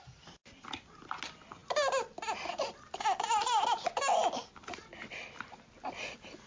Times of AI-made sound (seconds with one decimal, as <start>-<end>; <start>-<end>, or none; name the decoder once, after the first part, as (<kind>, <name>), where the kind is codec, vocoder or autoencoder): none